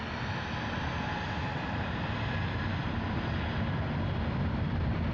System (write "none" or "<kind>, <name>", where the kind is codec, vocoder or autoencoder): none